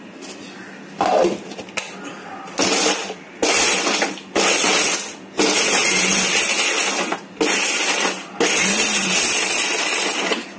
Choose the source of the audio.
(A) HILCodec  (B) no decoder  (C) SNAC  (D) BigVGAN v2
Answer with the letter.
B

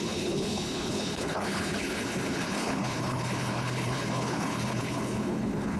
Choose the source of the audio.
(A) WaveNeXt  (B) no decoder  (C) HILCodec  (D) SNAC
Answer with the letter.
C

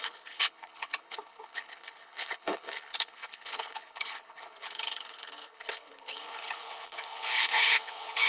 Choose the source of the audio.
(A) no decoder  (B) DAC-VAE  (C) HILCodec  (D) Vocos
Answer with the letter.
C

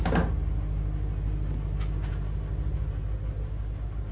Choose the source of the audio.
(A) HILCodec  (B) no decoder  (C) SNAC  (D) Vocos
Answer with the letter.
B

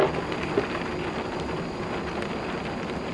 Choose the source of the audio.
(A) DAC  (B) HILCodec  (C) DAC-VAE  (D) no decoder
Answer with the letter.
D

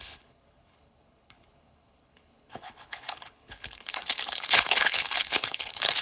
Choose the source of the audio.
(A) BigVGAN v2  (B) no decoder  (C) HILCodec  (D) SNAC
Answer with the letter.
C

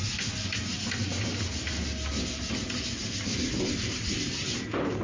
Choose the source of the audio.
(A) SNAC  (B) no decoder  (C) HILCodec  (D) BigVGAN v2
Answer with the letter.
B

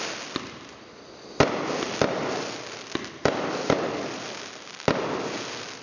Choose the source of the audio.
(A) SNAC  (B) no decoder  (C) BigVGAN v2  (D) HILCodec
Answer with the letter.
B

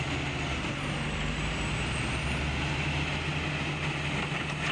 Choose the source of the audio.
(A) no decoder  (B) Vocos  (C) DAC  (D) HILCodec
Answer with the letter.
A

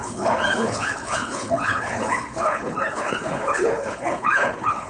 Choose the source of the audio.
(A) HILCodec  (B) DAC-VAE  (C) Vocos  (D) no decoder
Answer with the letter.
A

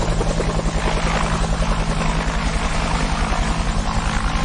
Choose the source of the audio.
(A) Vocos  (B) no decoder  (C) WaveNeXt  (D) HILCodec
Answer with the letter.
B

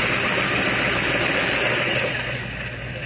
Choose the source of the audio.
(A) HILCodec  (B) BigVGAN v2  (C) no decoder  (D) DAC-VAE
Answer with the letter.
C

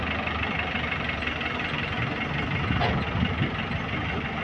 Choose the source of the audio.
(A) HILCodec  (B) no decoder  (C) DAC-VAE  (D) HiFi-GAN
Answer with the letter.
B